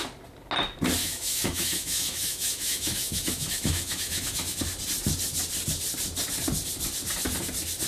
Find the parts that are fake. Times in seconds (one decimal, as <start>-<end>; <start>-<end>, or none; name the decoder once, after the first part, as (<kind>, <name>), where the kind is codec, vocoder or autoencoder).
1.0-4.6 (autoencoder, DAC-VAE)